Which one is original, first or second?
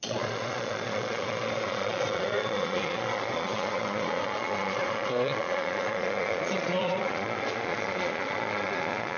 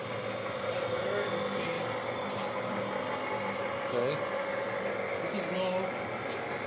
second